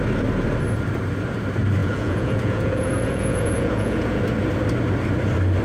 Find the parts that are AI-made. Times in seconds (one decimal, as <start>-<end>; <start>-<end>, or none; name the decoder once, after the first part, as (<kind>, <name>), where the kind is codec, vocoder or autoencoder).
1.8-4.2 (vocoder, Vocos)